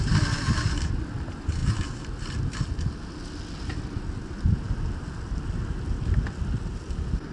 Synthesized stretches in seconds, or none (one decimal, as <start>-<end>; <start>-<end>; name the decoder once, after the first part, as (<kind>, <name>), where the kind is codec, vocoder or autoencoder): none

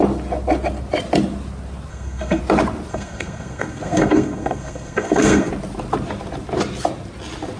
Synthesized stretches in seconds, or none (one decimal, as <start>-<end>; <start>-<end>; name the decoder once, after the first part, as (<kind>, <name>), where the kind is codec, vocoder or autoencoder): 1.9-2.4 (codec, SNAC); 2.9-5.5

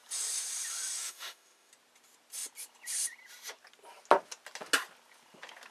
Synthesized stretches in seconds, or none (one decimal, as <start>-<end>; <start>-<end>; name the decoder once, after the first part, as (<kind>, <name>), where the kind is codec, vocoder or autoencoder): 1.0-1.7 (autoencoder, DAC-VAE)

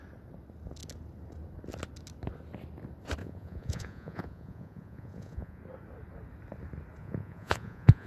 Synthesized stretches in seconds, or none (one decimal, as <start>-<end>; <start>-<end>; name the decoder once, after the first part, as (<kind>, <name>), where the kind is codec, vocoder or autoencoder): 3.2-5.6 (vocoder, Vocos); 7.0-8.1

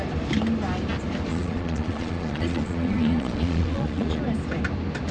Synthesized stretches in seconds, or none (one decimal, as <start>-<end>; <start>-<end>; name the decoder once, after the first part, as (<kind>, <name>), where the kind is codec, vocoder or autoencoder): 1.3-4.2 (vocoder, Vocos)

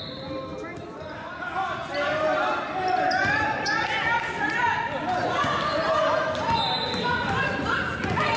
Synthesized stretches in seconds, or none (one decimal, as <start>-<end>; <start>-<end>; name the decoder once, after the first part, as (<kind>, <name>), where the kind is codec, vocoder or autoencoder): none